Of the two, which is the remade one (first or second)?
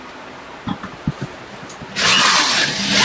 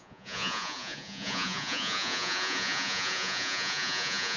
second